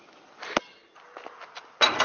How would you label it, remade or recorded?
recorded